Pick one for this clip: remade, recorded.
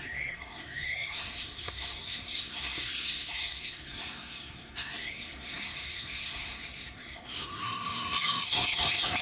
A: remade